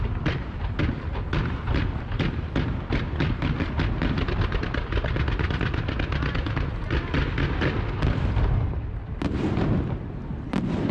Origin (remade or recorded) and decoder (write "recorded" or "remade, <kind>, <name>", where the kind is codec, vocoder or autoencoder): recorded